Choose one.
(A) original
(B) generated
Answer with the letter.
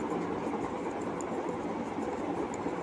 A